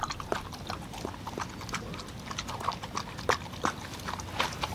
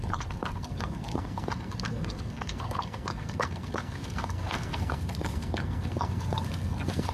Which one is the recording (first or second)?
first